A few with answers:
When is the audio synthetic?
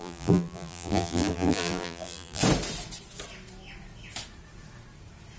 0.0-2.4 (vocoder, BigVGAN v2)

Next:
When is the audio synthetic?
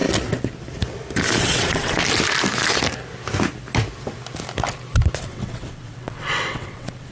1.4-2.0 (vocoder, WaveNeXt); 5.2-7.1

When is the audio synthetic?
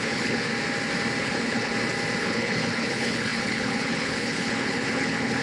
0.0-0.5 (codec, HILCodec); 1.2-1.7; 2.2-5.4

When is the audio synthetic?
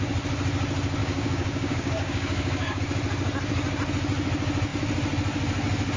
1.0-2.8 (codec, DAC)